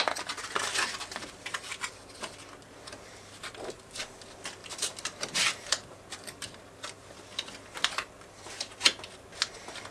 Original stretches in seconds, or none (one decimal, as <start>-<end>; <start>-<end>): 0.0-4.6; 6.6-9.9